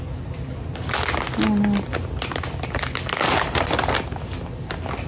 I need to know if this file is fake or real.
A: real